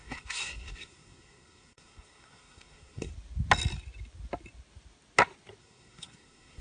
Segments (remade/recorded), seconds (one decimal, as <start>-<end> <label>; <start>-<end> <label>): 0.0-3.1 remade; 3.1-5.6 recorded; 5.6-6.6 remade